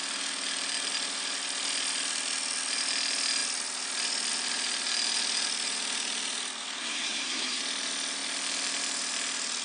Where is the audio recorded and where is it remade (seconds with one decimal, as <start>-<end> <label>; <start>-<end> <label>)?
0.0-6.8 recorded; 6.8-7.6 remade; 7.6-9.6 recorded